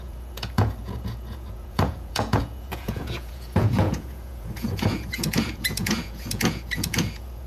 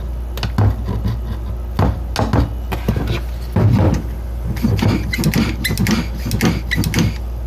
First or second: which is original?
second